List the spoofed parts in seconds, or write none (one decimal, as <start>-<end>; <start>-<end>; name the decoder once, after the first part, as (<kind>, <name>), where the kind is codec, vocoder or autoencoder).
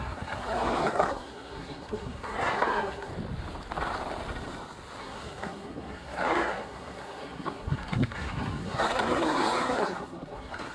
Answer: 0.0-3.1 (codec, SNAC); 5.0-10.7